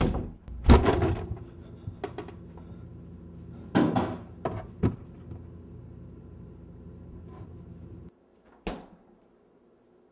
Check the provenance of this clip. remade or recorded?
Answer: recorded